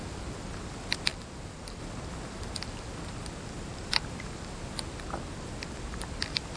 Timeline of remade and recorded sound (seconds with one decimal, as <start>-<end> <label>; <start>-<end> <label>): 0.0-1.1 recorded; 1.1-1.8 remade; 1.8-6.6 recorded